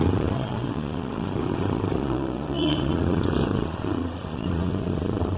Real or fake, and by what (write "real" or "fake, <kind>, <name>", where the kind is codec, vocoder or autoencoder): fake, vocoder, Vocos